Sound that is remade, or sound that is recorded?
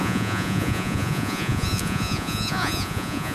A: remade